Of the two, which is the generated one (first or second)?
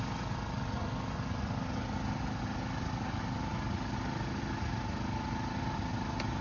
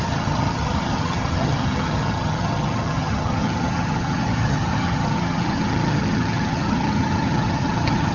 second